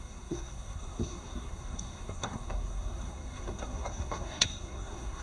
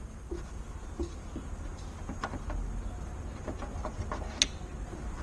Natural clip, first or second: second